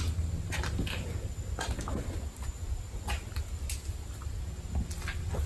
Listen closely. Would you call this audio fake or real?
real